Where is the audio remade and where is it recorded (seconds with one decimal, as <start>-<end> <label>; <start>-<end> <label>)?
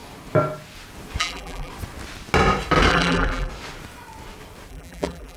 0.0-1.2 recorded; 1.2-1.7 remade; 1.7-2.9 recorded; 2.9-3.5 remade; 3.5-4.7 recorded; 4.7-5.4 remade